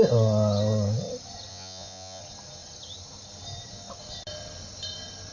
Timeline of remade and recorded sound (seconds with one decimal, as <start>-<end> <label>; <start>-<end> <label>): 0.0-1.5 recorded; 1.5-2.2 remade; 2.2-5.3 recorded